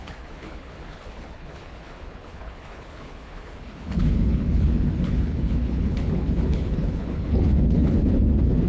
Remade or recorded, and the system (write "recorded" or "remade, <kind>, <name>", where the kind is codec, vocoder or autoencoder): remade, codec, HILCodec